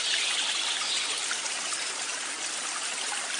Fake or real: real